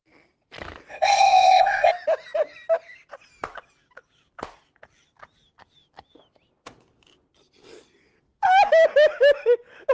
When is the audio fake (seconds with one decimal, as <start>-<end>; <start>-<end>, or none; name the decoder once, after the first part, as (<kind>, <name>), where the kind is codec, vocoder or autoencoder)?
0.9-1.9 (codec, ZipCodec)